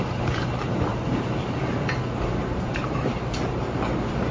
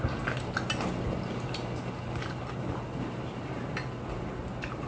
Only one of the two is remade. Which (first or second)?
first